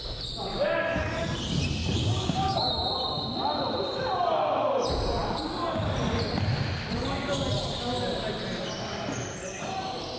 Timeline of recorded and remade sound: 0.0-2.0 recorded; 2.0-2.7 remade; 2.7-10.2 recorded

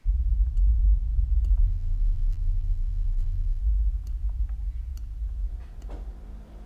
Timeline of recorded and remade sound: 0.0-1.6 recorded; 1.6-3.6 remade; 3.6-6.7 recorded

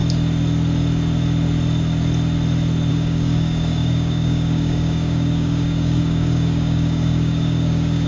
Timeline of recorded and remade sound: 0.0-2.9 recorded; 2.9-8.1 remade